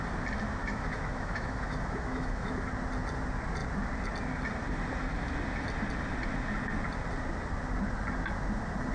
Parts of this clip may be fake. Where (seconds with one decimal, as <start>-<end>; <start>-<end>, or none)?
0.6-2.7